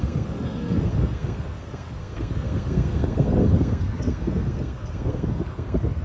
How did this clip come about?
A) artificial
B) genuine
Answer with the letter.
A